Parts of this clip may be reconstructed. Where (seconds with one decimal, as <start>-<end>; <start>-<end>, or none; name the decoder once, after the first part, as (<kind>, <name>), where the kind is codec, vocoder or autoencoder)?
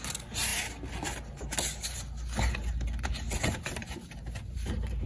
3.8-5.1 (vocoder, BigVGAN v2)